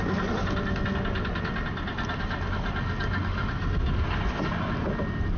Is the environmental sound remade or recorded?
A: recorded